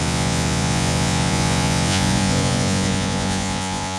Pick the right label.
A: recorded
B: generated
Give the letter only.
B